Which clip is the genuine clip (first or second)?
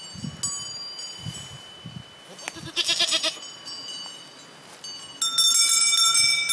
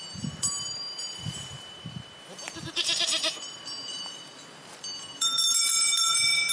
first